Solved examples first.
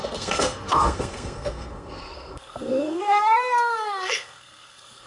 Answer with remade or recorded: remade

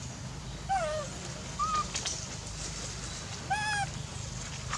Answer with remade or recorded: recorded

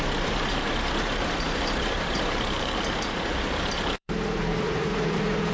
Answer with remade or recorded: remade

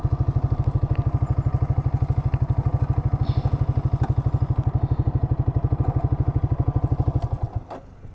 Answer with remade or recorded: recorded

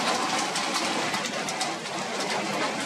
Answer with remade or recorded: recorded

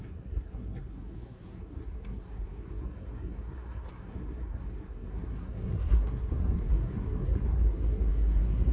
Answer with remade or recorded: remade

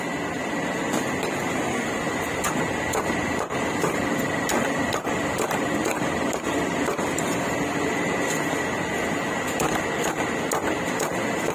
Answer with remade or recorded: recorded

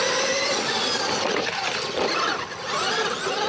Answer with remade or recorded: recorded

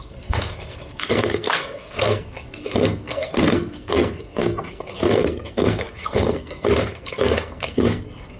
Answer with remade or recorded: remade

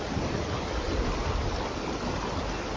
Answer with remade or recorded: recorded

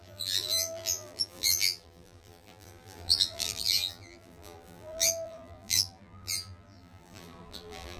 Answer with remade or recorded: remade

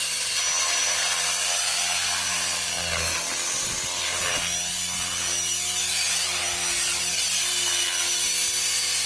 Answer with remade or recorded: recorded